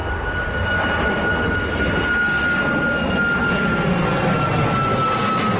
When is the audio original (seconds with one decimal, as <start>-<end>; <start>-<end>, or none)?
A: 0.0-5.6

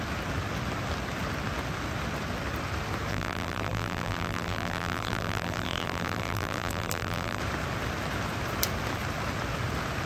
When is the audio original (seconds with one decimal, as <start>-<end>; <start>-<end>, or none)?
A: 0.0-3.1; 7.4-10.1